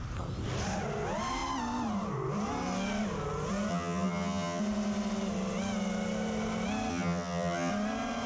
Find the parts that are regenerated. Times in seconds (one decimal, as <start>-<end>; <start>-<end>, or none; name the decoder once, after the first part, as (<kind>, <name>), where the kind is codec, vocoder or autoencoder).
3.7-4.6 (vocoder, HiFi-GAN); 6.9-7.7